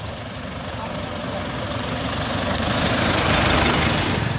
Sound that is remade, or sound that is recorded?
recorded